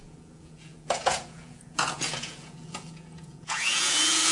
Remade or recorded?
remade